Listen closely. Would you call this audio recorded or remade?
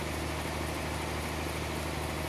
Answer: recorded